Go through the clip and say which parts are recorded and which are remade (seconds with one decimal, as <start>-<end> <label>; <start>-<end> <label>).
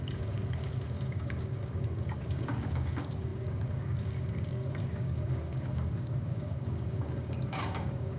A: 0.0-8.2 remade